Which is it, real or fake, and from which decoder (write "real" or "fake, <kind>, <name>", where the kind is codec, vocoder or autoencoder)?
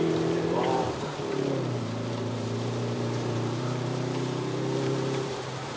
fake, vocoder, BigVGAN v2